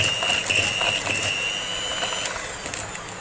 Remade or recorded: recorded